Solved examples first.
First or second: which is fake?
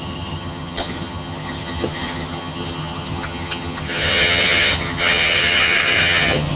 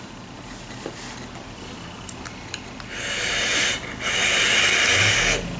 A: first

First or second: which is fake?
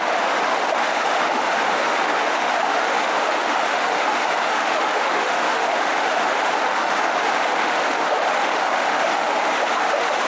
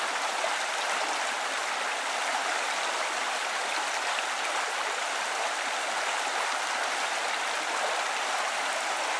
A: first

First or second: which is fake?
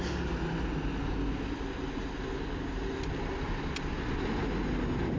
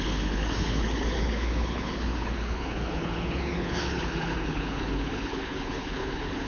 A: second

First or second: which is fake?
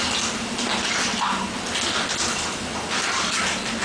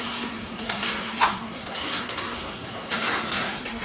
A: second